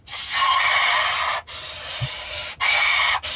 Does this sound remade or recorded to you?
recorded